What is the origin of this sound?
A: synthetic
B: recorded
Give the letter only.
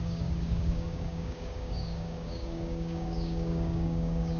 A